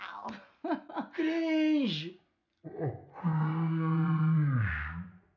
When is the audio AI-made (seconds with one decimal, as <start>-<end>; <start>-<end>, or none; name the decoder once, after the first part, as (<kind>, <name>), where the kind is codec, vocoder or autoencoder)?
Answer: 2.4-4.7 (vocoder, Vocos)